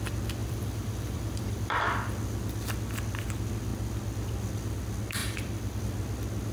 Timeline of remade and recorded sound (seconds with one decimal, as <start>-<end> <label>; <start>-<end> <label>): 0.0-0.4 recorded; 0.4-1.8 remade; 1.8-5.2 recorded; 5.2-5.8 remade; 5.8-6.5 recorded